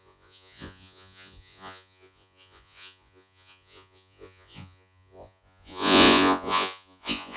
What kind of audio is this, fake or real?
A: fake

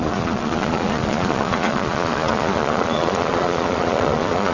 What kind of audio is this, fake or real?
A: fake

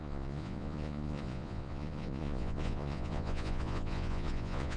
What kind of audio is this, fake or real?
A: fake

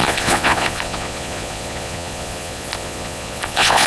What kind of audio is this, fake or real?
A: fake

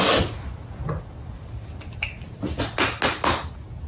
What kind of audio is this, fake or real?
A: real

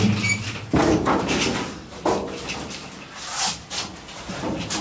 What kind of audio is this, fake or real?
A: real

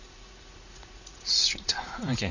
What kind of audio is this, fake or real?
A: fake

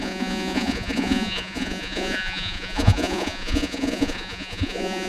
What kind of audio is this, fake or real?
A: fake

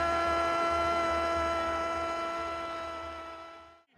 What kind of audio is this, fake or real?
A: real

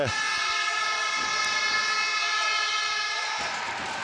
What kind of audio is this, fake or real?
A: real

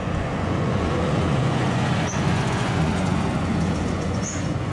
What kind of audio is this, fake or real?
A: fake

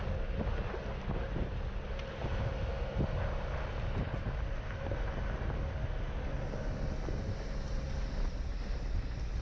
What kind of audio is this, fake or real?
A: real